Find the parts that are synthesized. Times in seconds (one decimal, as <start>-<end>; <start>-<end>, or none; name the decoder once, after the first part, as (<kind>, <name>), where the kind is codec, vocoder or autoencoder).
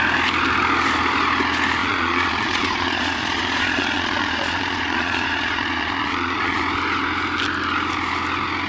1.8-6.6 (vocoder, Vocos)